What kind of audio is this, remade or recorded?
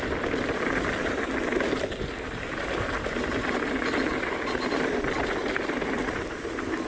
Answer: recorded